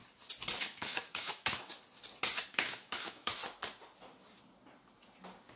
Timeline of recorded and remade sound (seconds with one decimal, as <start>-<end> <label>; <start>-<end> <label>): 0.0-0.6 recorded; 0.6-1.7 remade; 1.7-2.5 recorded; 2.5-3.4 remade; 3.4-5.6 recorded